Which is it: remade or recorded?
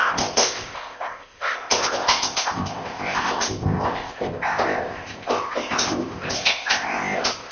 remade